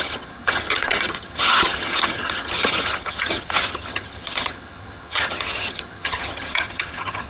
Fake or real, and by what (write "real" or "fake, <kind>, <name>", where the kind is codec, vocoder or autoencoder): fake, vocoder, HiFi-GAN